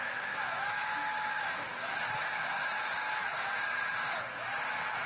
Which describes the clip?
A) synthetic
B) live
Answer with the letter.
A